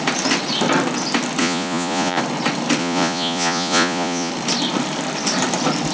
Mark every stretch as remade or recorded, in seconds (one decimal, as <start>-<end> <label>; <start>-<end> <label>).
0.0-1.4 recorded; 1.4-2.2 remade; 2.2-2.8 recorded; 2.8-4.3 remade; 4.3-5.9 recorded